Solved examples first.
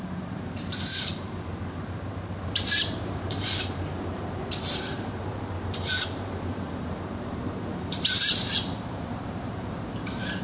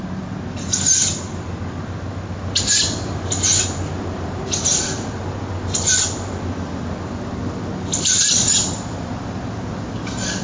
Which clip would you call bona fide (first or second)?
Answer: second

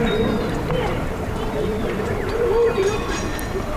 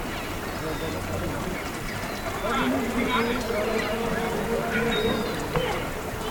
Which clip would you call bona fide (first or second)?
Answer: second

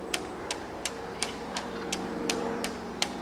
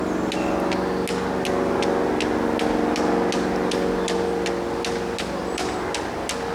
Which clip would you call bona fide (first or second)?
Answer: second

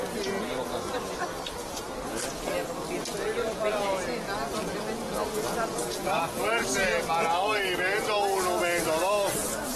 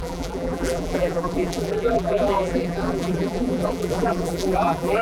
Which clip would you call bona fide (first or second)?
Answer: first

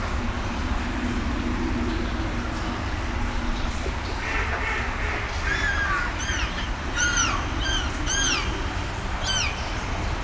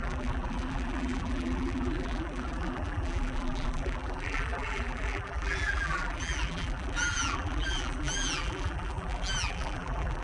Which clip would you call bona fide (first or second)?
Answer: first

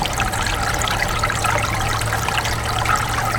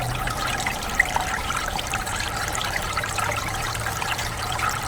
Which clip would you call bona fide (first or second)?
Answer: first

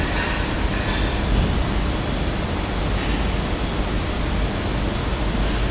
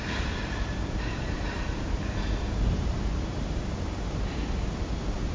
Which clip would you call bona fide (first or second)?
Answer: first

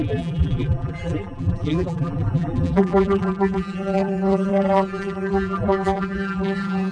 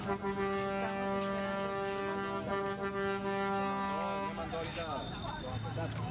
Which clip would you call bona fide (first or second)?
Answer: second